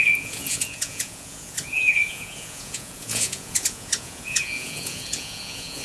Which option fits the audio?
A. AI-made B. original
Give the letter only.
A